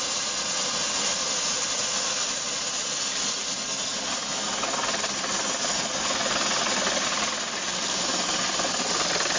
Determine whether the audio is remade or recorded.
recorded